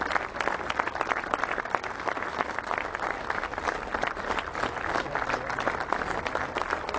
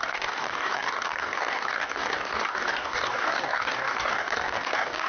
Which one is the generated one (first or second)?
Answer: second